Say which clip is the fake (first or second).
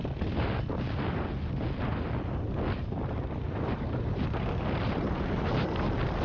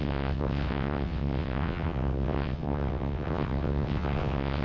second